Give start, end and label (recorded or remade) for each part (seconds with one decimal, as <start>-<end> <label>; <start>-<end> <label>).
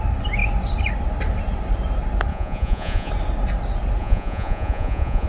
0.0-2.3 recorded; 2.3-3.1 remade; 3.1-4.0 recorded; 4.0-5.3 remade